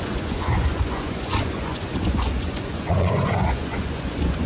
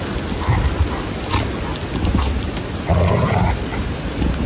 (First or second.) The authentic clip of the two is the second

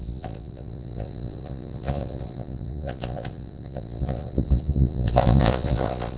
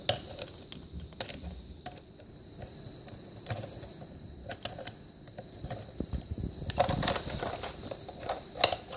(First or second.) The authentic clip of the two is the second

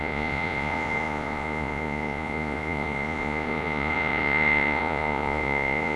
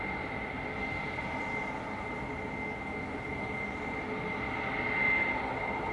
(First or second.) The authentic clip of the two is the second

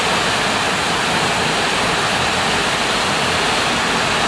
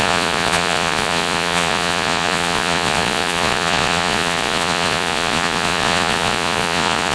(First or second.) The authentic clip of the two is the first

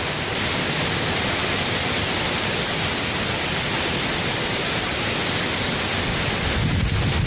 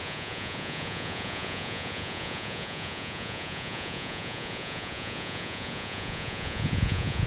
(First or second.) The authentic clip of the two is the first